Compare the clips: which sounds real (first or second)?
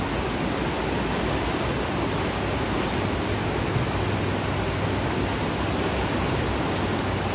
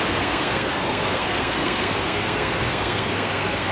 first